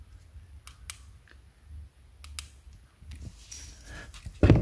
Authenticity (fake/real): real